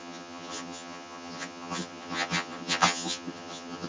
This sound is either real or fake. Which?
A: fake